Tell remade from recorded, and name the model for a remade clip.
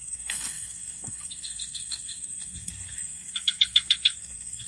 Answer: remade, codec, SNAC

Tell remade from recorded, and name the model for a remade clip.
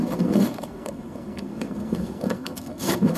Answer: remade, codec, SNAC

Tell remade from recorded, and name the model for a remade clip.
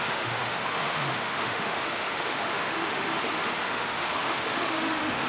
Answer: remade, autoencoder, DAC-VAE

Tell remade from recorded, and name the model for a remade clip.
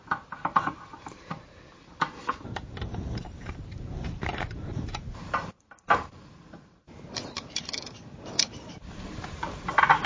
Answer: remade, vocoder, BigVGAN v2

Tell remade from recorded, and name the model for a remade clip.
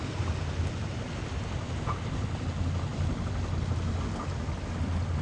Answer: recorded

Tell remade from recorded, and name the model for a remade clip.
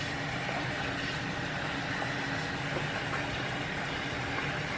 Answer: recorded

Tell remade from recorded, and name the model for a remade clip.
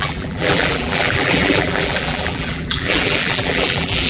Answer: remade, vocoder, BigVGAN v2